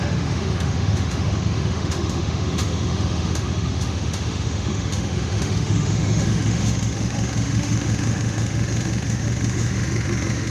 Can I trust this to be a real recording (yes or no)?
no